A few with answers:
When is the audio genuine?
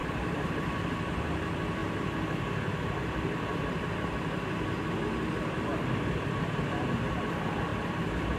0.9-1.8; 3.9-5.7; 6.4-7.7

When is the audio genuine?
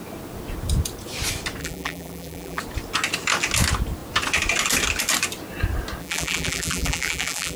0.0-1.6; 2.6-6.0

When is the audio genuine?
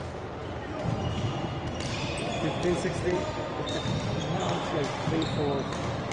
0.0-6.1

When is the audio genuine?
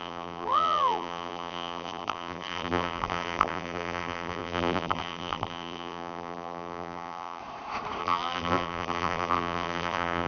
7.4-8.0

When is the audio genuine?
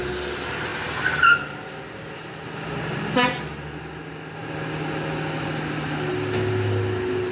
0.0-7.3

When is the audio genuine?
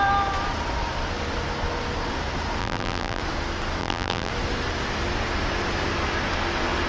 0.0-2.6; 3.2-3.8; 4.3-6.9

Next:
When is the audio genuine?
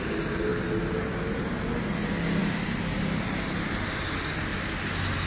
0.0-0.5; 1.4-2.4; 3.7-4.5